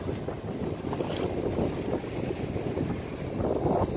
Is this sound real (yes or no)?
yes